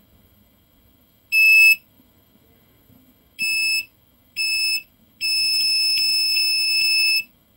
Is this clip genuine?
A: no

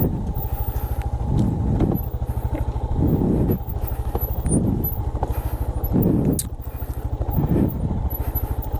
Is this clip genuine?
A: yes